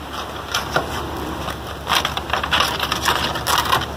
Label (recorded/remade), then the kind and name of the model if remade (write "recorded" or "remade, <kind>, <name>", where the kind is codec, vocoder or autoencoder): recorded